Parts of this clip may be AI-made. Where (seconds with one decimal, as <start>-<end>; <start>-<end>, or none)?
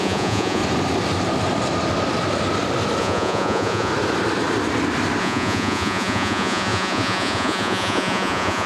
0.0-0.6; 3.0-3.9; 5.2-8.7